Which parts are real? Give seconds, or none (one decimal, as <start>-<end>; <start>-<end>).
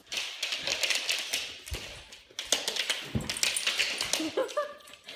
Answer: 0.0-5.2